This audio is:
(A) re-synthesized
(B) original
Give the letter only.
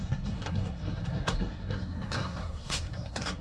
A